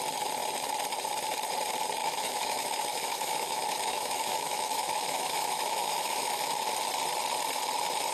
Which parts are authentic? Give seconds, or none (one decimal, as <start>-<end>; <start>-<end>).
0.0-2.0; 6.6-8.1